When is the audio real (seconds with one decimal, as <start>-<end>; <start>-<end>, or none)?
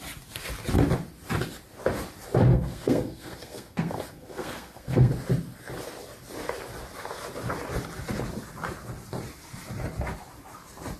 0.0-2.5; 5.1-11.0